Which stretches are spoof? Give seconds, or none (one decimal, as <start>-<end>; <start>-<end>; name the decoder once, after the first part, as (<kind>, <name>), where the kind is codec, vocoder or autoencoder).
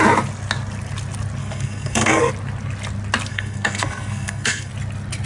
1.4-2.3 (codec, SNAC); 3.3-4.7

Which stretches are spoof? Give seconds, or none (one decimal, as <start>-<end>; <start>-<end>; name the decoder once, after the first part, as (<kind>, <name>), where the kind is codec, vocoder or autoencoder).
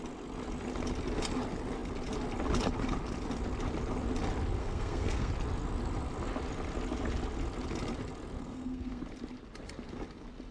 4.6-5.3 (codec, SNAC); 8.4-9.0